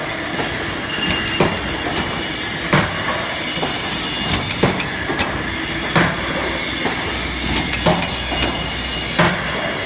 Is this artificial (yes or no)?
no